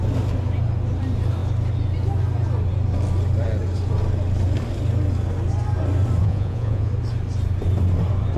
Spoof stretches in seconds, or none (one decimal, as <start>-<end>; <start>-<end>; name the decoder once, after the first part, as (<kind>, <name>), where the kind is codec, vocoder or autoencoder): 6.2-6.9 (vocoder, Vocos)